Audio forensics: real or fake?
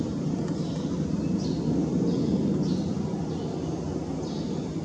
real